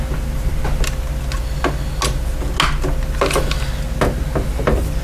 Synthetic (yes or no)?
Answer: no